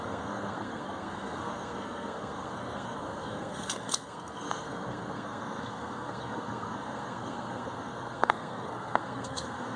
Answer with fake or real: fake